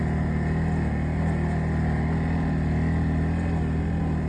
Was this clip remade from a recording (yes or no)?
no